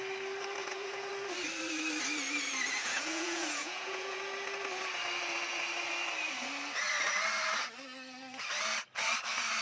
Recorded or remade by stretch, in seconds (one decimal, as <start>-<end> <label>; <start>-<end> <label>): 0.0-0.6 recorded; 0.6-1.1 remade; 1.1-2.8 recorded; 2.8-4.2 remade; 4.2-9.6 recorded